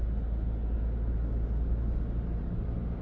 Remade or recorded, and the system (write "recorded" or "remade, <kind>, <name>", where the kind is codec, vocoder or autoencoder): recorded